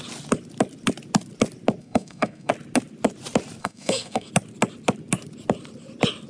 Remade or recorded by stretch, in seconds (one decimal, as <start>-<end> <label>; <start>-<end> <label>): 0.0-1.8 recorded; 1.8-2.5 remade; 2.5-3.6 recorded; 3.6-4.3 remade; 4.3-6.3 recorded